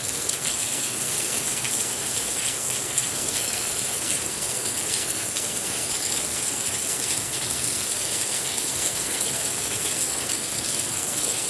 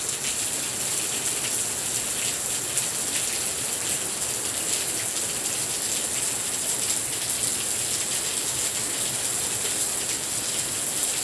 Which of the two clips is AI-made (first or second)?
first